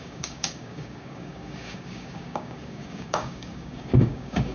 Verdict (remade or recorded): remade